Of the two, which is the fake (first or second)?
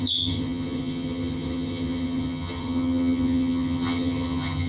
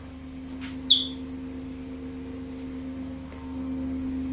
first